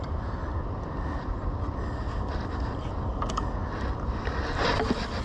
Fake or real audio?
real